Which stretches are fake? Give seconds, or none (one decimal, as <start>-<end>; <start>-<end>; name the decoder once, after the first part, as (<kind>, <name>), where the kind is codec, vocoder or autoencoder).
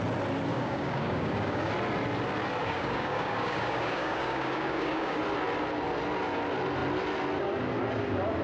0.5-1.7 (codec, DAC); 2.6-5.2